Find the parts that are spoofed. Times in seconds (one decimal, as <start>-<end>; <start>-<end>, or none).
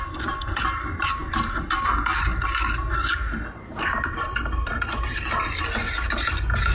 none